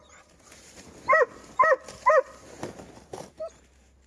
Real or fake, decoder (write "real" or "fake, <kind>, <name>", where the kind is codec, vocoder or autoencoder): fake, vocoder, BigVGAN v2